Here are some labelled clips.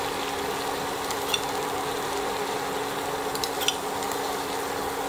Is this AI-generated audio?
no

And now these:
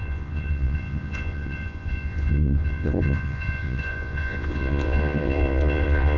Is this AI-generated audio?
yes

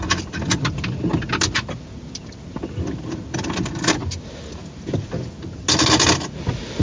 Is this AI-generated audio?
no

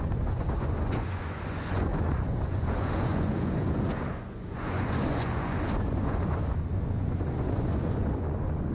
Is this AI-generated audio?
yes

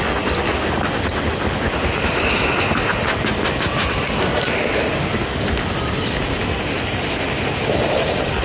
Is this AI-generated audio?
no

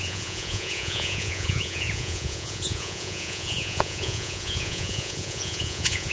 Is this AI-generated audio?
yes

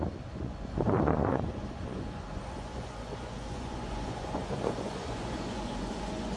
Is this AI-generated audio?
yes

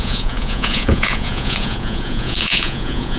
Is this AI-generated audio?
yes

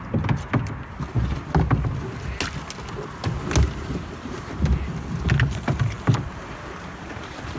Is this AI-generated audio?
no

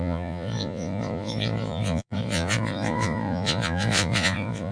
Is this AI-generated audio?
yes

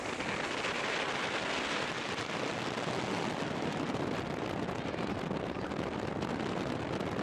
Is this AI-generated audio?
no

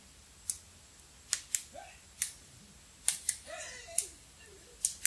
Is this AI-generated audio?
no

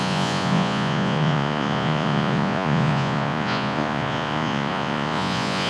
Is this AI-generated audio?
yes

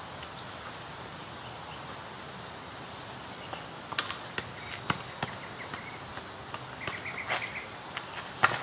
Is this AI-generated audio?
no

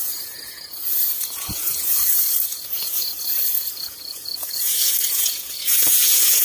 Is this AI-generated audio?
yes